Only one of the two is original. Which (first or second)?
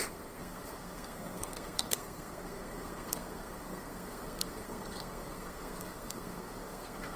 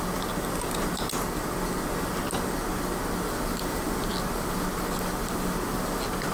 second